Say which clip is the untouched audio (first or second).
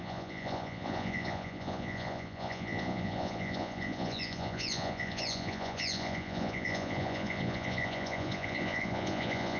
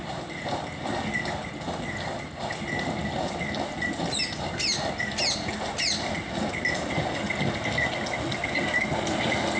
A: second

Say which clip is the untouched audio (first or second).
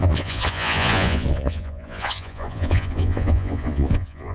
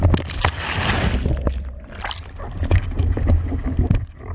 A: second